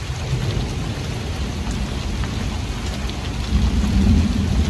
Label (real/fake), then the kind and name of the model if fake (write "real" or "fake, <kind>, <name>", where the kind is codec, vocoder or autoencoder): real